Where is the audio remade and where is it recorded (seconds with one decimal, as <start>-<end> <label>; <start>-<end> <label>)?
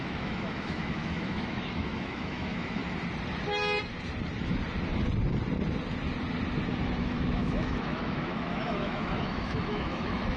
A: 0.0-2.8 remade; 2.8-7.0 recorded; 7.0-10.4 remade